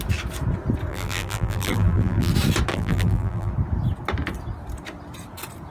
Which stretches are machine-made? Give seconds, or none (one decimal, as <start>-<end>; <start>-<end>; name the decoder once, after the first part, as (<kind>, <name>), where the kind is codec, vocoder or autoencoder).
0.9-2.3 (vocoder, BigVGAN v2); 2.7-3.5